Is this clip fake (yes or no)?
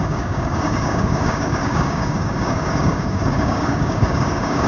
yes